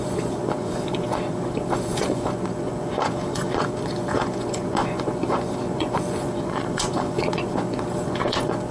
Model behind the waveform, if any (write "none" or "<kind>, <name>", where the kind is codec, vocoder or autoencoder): vocoder, Vocos